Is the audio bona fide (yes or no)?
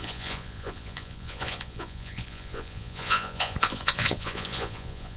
no